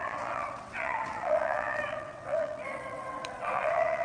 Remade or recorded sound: remade